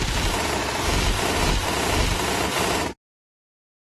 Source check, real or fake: real